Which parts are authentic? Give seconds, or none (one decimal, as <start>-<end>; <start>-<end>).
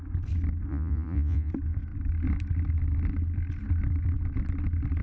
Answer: 0.0-0.7; 1.5-5.0